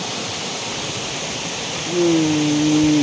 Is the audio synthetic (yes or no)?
no